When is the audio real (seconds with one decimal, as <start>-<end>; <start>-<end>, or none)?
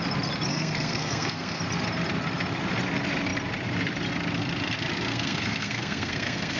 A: 0.0-0.5; 1.6-5.1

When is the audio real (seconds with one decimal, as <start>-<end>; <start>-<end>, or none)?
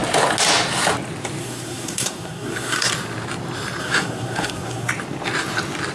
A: 0.0-1.4; 2.9-3.8; 4.9-5.9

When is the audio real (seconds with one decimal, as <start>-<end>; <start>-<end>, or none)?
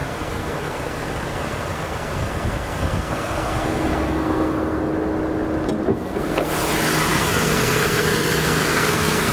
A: 4.9-5.9; 6.5-7.1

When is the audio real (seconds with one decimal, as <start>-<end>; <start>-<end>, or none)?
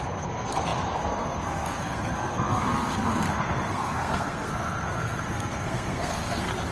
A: none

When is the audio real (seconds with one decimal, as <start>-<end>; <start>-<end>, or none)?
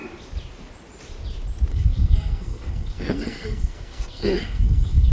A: 0.0-1.7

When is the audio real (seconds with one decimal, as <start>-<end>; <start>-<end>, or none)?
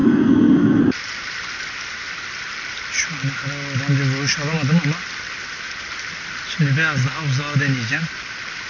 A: 0.8-8.7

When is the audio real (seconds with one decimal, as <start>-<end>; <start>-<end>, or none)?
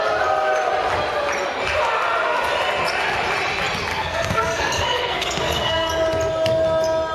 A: 0.0-3.9; 5.9-7.1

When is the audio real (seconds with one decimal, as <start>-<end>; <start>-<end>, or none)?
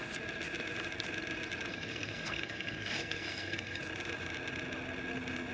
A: 0.0-1.7; 3.8-5.5